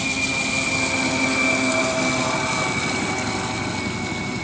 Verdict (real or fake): real